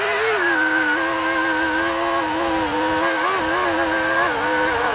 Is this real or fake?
real